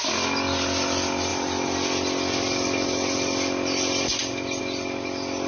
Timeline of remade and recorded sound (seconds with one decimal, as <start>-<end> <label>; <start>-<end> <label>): 0.0-5.5 recorded